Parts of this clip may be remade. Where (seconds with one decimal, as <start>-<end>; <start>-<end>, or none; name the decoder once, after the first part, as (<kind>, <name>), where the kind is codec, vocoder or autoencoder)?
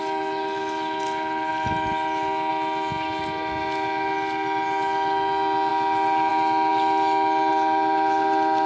none